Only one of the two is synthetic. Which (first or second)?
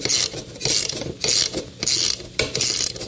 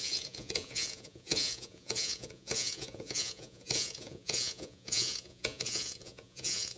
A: second